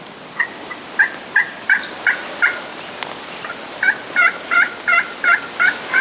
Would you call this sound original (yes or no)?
yes